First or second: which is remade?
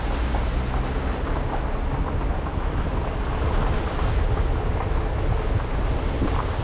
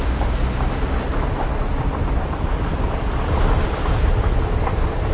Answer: second